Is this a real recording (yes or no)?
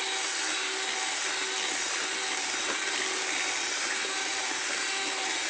yes